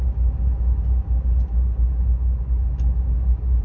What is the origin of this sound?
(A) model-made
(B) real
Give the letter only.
B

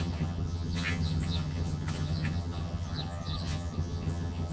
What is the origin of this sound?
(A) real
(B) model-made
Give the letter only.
B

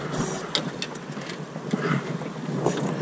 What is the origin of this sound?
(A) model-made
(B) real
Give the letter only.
B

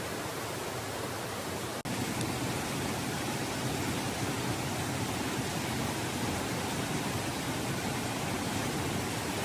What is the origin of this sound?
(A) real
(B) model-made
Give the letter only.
A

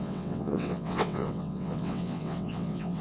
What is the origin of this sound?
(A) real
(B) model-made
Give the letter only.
B